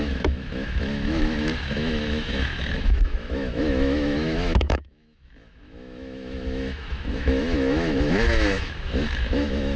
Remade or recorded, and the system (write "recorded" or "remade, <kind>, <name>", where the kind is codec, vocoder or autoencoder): remade, autoencoder, DAC-VAE